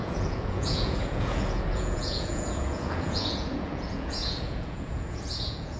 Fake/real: fake